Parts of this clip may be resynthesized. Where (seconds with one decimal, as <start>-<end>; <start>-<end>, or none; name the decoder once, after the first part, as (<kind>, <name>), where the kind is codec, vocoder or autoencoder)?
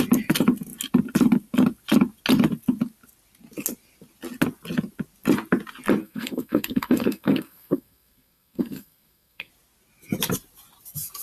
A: 6.0-9.5 (codec, SNAC)